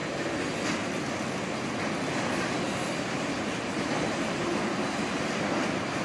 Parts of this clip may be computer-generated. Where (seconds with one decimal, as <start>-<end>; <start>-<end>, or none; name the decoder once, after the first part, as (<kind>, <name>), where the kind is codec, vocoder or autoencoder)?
3.4-6.0 (vocoder, BigVGAN v2)